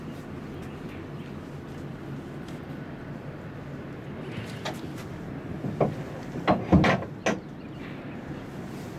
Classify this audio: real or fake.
real